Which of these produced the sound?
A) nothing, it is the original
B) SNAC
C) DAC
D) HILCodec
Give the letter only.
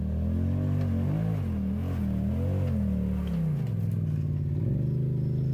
A